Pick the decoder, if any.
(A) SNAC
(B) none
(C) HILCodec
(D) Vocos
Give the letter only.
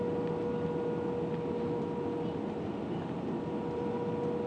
B